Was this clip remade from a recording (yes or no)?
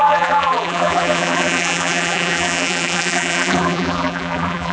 yes